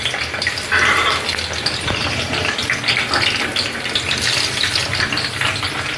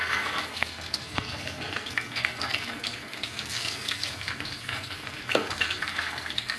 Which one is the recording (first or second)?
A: first